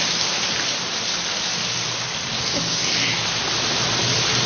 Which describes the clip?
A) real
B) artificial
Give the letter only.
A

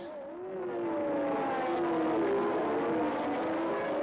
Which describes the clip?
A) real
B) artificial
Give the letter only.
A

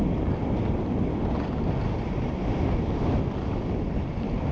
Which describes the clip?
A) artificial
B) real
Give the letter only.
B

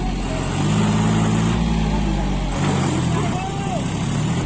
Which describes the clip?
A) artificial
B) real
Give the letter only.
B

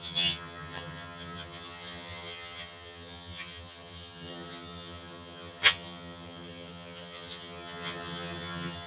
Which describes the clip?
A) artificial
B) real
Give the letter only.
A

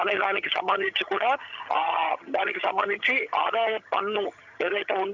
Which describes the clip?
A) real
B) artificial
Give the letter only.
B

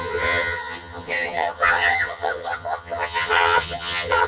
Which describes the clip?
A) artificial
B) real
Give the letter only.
A